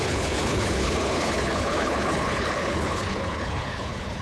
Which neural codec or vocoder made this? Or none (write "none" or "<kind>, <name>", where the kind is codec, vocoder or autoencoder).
codec, HILCodec